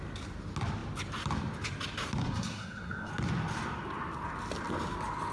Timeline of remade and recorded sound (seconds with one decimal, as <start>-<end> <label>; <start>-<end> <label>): 0.0-2.2 recorded; 2.2-3.1 remade; 3.1-5.3 recorded